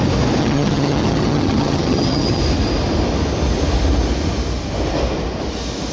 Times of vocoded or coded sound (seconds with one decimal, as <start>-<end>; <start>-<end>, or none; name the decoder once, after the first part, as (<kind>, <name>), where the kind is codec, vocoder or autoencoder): 0.4-2.4 (vocoder, HiFi-GAN)